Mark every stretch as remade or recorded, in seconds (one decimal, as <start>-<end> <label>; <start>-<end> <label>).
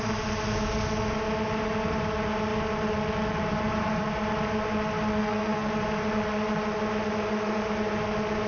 0.0-5.2 recorded; 5.2-5.7 remade; 5.7-8.5 recorded